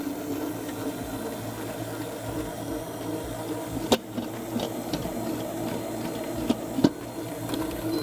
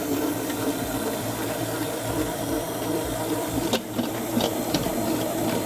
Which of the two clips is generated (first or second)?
second